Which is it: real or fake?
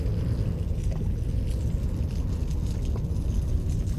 real